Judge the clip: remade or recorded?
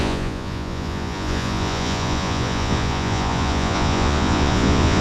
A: remade